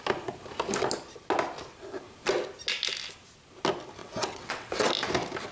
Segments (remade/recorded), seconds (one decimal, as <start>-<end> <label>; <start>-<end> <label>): 0.0-4.0 recorded; 4.0-4.9 remade; 4.9-5.5 recorded